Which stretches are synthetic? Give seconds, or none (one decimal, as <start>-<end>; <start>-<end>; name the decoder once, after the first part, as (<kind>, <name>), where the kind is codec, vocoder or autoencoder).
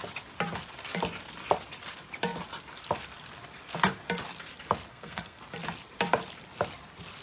4.9-5.4 (codec, SNAC)